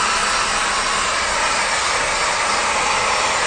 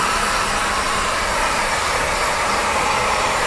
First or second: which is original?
first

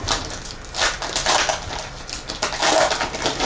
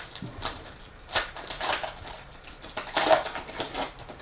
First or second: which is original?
first